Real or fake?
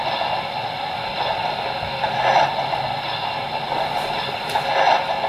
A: real